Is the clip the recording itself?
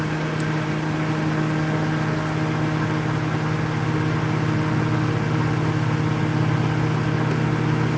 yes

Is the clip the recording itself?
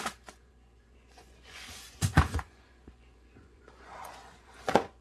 no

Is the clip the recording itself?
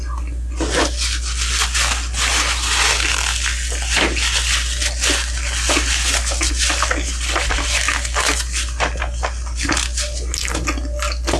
yes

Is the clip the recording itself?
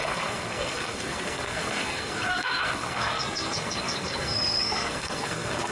no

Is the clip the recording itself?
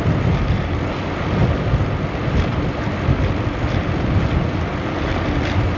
yes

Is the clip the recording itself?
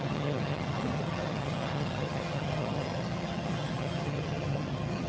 no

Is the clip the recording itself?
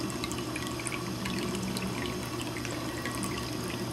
yes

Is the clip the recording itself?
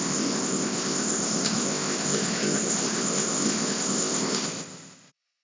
no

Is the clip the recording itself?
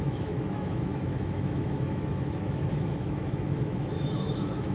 no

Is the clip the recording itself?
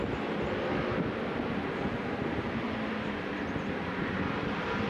no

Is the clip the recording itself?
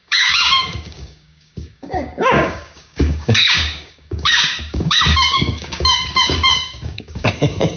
no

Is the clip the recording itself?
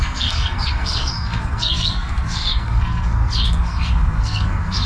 no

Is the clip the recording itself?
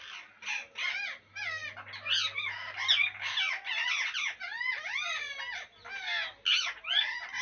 yes